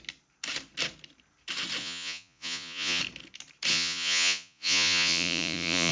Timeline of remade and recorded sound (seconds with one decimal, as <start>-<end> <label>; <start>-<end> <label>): 0.0-1.8 recorded; 1.8-3.0 remade; 3.0-3.7 recorded; 3.7-5.9 remade